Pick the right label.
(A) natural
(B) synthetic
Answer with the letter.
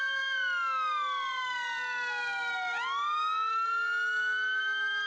A